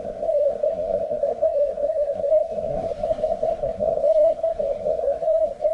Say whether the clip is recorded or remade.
remade